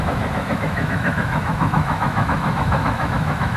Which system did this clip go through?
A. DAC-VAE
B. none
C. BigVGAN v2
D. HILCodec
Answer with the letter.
A